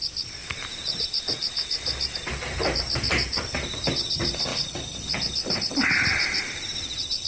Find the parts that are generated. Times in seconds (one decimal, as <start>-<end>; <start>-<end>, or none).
none